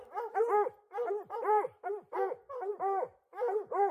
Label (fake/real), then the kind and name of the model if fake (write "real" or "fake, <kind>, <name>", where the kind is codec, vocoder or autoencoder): fake, vocoder, BigVGAN v2